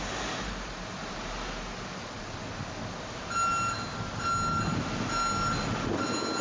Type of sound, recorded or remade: recorded